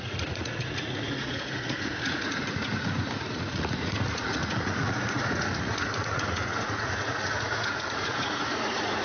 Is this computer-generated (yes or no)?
yes